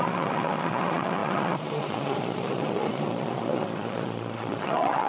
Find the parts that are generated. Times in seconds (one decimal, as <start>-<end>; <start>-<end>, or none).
0.0-5.1